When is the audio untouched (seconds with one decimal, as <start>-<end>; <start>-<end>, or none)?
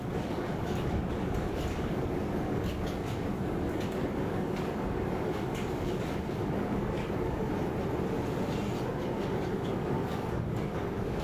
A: 7.5-8.9